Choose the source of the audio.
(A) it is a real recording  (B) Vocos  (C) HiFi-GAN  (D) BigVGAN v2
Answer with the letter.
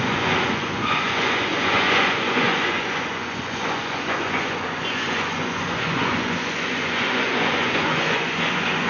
B